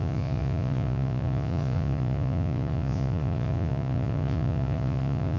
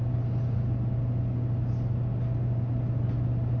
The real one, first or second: second